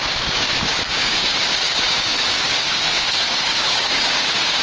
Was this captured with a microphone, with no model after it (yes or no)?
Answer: no